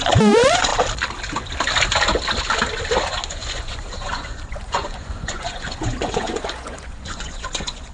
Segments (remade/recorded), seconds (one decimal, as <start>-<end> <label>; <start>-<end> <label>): 0.0-0.7 remade; 0.7-3.3 recorded; 3.3-7.9 remade